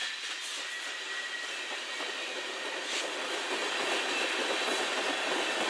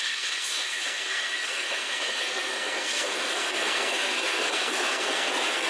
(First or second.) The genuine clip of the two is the first